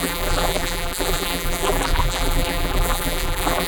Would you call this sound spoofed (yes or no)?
yes